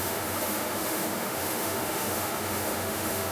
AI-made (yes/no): yes